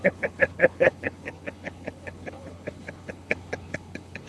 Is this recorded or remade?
remade